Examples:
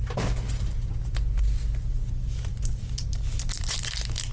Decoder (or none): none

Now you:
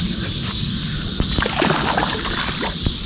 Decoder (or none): none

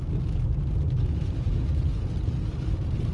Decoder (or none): none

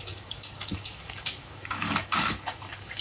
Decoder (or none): codec, DAC